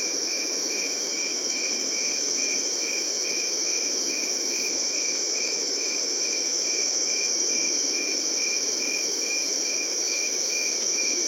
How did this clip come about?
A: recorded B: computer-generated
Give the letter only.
B